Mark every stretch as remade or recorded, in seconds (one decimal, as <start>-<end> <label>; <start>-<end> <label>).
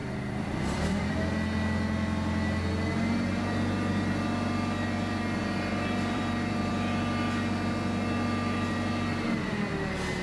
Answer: 0.0-1.1 remade; 1.1-5.4 recorded; 5.4-6.7 remade; 6.7-10.2 recorded